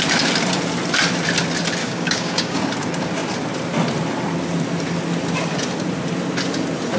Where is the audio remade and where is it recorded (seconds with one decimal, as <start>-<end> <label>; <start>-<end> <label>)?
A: 0.0-1.8 recorded; 1.8-2.6 remade; 2.6-7.0 recorded